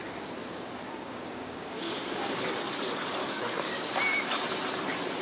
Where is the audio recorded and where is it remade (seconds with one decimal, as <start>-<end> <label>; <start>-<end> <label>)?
0.0-0.4 recorded; 0.4-2.4 remade; 2.4-3.2 recorded; 3.2-4.0 remade; 4.0-5.2 recorded